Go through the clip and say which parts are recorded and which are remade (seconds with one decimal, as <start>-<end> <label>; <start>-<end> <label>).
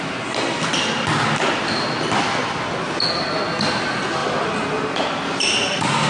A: 0.0-6.1 recorded